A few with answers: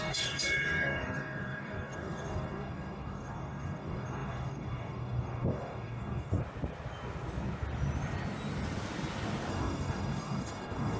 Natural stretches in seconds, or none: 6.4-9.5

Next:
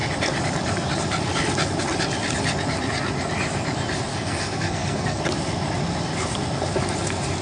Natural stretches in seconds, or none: 0.0-4.1; 5.2-7.4

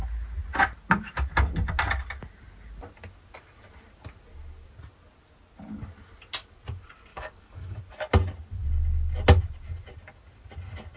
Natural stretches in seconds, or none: 0.0-7.1; 7.8-11.0

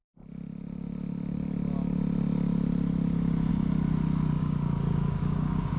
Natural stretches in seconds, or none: 0.0-4.4

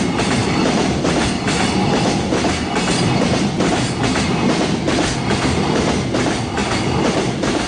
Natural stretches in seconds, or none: 0.0-7.7

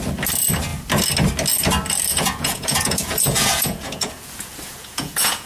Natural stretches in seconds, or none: 0.0-2.1

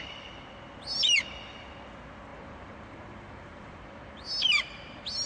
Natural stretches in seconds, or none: 0.0-2.3; 4.1-5.3